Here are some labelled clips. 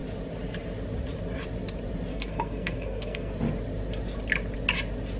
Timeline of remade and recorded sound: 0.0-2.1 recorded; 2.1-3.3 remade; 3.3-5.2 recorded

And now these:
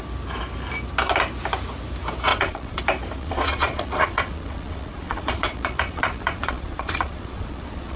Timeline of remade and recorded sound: 0.0-2.3 recorded; 2.3-2.8 remade; 2.8-3.2 recorded; 3.2-8.0 remade

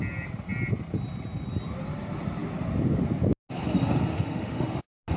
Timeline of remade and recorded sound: 0.0-4.1 recorded; 4.1-4.8 remade; 4.8-5.2 recorded

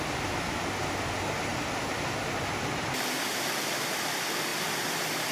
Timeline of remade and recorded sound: 0.0-5.3 recorded

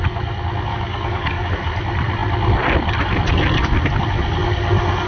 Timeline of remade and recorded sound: 0.0-0.7 recorded; 0.7-1.5 remade; 1.5-5.1 recorded

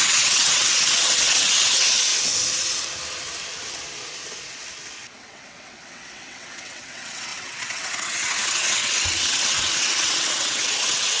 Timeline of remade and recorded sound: 0.0-2.1 remade; 2.1-5.2 recorded; 5.2-11.2 remade

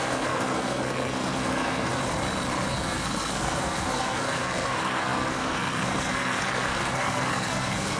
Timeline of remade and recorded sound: 0.0-1.9 remade; 1.9-2.7 recorded; 2.7-8.0 remade